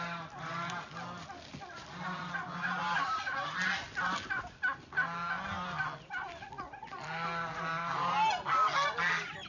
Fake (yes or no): no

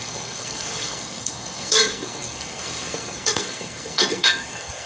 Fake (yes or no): yes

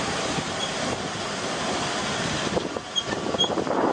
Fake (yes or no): yes